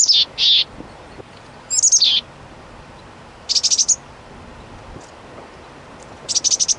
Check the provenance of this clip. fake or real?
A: real